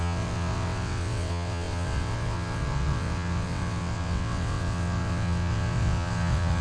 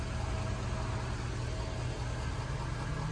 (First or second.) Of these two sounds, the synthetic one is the first